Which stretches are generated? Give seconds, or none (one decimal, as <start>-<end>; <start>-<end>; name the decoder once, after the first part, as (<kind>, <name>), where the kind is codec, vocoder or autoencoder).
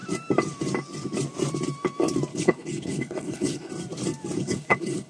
2.3-3.7 (codec, HILCodec); 4.4-5.1